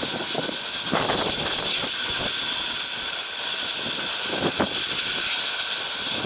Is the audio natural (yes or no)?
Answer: yes